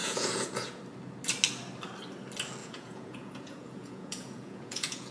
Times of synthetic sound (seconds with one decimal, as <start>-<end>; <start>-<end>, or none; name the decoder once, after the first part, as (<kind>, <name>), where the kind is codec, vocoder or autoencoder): 0.0-0.8 (vocoder, Vocos); 2.6-5.1